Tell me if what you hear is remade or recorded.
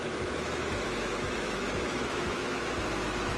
remade